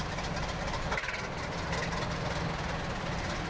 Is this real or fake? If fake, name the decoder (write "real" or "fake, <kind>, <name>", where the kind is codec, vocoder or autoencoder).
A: real